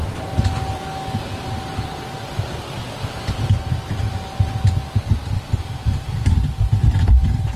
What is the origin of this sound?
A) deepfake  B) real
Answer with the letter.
A